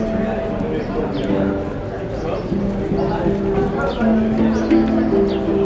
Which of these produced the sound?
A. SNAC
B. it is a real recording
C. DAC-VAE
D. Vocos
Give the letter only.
B